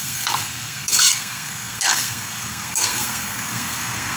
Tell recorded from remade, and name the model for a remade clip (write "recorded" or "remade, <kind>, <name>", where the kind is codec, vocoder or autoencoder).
remade, codec, SNAC